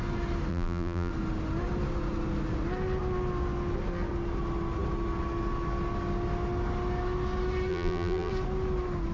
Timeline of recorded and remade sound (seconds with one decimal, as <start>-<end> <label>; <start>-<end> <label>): 0.0-0.5 recorded; 0.5-1.1 remade; 1.1-7.7 recorded; 7.7-8.3 remade; 8.3-9.1 recorded